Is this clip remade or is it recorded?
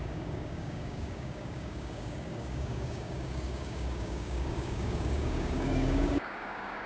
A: remade